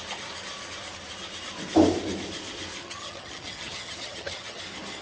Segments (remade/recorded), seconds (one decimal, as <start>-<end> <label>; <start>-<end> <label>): 0.0-2.8 recorded; 2.8-4.6 remade; 4.6-5.0 recorded